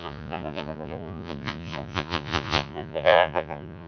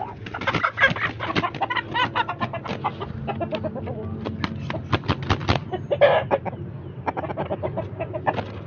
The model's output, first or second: first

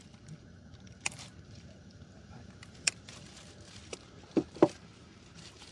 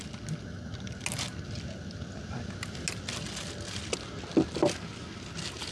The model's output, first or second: first